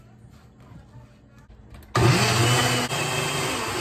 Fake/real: real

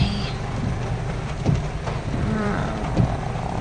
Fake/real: fake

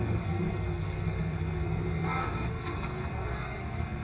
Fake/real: fake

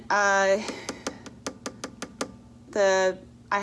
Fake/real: real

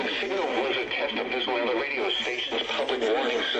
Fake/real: real